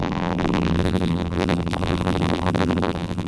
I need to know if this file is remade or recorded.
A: remade